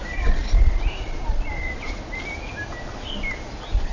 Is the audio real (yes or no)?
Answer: yes